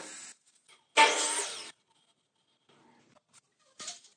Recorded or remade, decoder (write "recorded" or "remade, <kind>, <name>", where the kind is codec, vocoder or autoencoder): recorded